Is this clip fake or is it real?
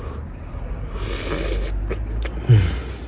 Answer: real